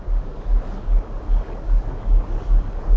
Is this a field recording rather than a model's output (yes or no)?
no